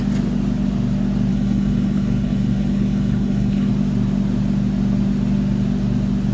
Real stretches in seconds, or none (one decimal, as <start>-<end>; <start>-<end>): 0.0-1.3; 3.7-6.3